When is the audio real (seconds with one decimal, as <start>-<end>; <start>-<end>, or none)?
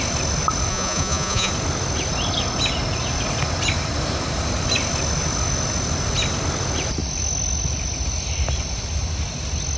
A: 0.0-0.7; 1.5-9.8